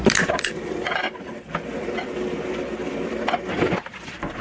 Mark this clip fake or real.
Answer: real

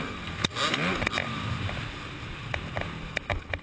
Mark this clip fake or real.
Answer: real